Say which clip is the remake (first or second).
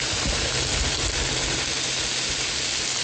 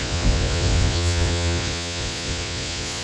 second